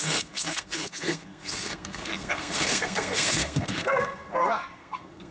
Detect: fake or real fake